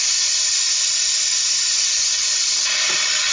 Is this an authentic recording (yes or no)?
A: yes